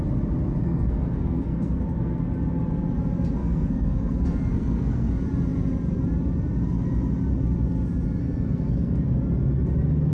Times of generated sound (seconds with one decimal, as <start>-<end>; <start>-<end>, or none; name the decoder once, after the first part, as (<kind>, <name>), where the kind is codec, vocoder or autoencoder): 0.6-2.2 (codec, SNAC); 3.4-5.1; 8.2-9.1